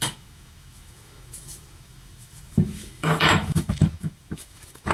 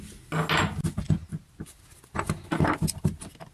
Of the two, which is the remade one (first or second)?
first